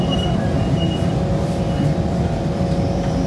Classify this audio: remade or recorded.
remade